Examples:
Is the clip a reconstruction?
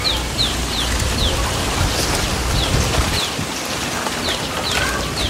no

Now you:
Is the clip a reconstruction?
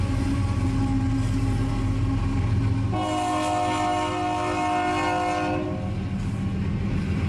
no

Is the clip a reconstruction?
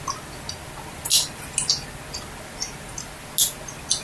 no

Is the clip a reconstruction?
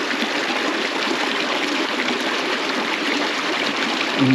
yes